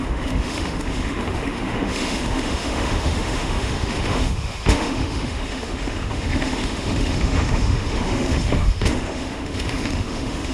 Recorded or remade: remade